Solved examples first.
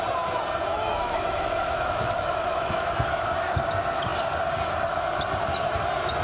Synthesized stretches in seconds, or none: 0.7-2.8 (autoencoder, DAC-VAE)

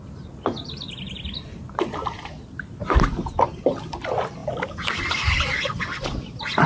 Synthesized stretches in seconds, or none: none

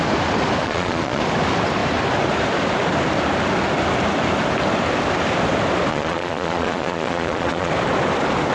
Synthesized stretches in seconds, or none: 0.6-1.2 (vocoder, Vocos); 5.9-7.7

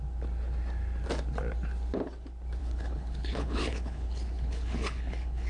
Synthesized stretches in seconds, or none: 2.6-5.5 (codec, HILCodec)

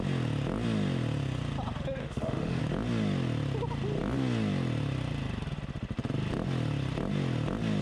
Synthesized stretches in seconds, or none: 2.0-2.6 (autoencoder, DAC-VAE)